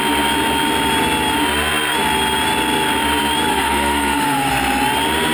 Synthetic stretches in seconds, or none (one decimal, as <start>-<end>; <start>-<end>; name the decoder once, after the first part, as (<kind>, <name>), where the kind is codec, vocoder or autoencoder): 3.5-4.5 (codec, SNAC)